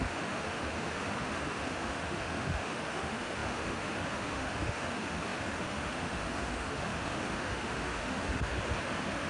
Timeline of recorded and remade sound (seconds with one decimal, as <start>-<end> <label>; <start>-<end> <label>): 0.0-9.3 remade